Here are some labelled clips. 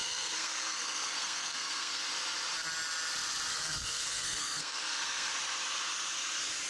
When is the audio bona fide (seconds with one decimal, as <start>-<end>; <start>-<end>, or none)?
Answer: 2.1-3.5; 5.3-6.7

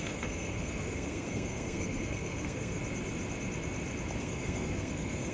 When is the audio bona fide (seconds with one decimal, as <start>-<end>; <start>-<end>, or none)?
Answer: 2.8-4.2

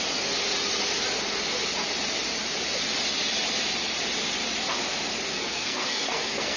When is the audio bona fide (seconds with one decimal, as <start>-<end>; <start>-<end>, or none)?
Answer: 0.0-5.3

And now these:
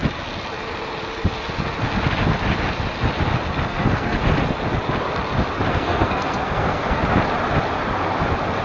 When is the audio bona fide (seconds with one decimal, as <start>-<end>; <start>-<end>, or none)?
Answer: 0.0-3.7; 4.2-5.7; 7.0-8.6

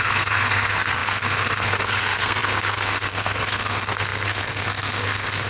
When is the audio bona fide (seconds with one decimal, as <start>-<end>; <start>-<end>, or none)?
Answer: none

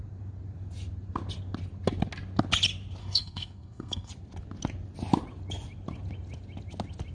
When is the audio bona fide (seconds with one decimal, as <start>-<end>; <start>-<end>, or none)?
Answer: 0.0-3.0; 4.1-7.1